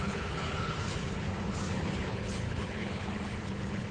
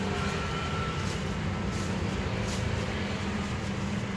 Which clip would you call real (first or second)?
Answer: second